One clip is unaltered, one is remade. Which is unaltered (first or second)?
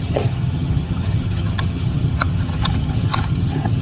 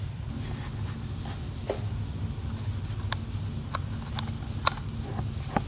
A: second